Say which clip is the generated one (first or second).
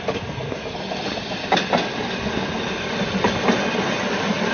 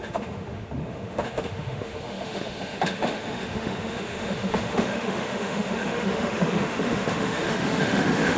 second